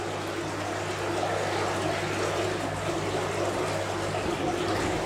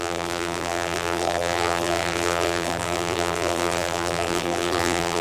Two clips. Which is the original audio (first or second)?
first